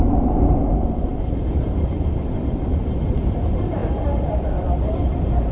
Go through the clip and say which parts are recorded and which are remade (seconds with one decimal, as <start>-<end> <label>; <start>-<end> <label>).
0.0-3.8 remade; 3.8-4.9 recorded; 4.9-5.5 remade